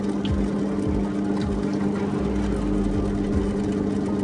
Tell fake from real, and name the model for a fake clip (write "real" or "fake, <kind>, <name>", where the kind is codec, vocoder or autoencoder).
real